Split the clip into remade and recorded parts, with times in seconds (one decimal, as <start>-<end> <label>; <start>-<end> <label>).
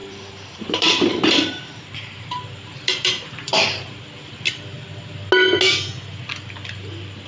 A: 0.0-4.0 remade; 4.0-7.3 recorded